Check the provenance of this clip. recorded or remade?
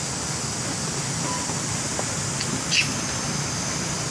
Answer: recorded